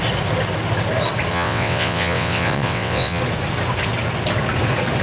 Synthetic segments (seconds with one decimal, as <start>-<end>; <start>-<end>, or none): 1.3-3.2